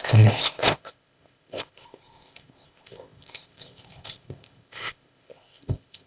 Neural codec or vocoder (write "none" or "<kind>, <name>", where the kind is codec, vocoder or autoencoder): codec, ZipCodec